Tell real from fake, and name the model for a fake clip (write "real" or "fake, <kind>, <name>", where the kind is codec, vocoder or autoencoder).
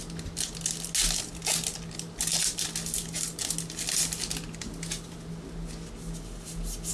real